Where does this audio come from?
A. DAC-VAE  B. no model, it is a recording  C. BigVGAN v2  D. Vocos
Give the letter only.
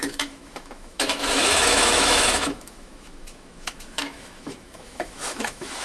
A